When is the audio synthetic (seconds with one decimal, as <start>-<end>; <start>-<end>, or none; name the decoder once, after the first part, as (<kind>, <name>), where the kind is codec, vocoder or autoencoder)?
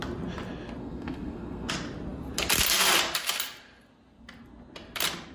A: 0.8-1.7 (codec, SNAC)